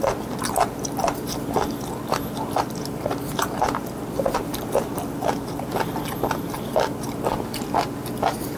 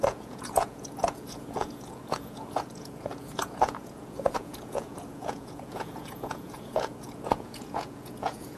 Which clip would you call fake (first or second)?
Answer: second